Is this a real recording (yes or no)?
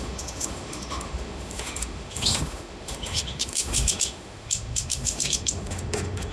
no